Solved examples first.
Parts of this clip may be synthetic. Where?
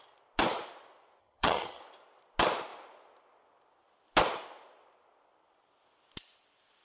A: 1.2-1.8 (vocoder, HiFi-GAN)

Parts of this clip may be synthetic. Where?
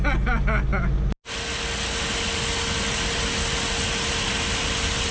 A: none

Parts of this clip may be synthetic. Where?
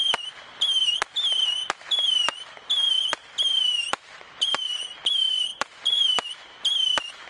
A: 3.7-4.8 (vocoder, BigVGAN v2); 5.5-6.6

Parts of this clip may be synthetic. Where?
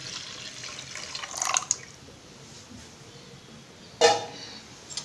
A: none